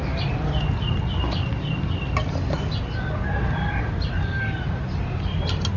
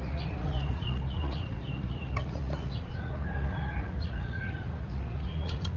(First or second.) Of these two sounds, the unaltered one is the first